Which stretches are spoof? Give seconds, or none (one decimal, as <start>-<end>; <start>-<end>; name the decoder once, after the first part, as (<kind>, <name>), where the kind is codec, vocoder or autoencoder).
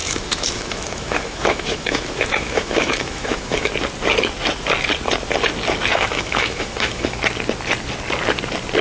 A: 0.0-3.7 (autoencoder, DAC-VAE); 5.9-7.2